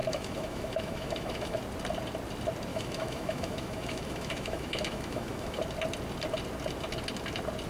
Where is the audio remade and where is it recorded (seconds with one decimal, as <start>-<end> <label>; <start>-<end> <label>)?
0.0-1.6 remade; 1.6-2.7 recorded; 2.7-5.6 remade; 5.6-7.7 recorded